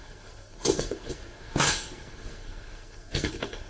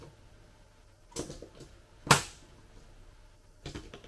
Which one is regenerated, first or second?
first